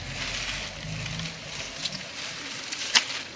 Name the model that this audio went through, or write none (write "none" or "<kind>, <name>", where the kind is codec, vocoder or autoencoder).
none